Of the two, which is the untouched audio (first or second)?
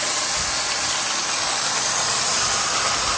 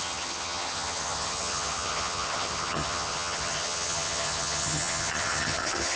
first